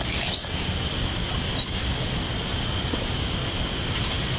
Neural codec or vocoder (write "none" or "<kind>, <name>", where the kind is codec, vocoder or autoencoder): none